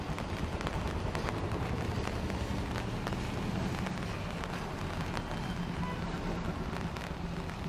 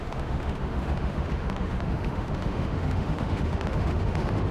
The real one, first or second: first